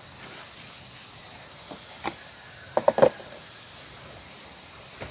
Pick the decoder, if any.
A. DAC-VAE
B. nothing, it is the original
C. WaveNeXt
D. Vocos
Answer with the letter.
B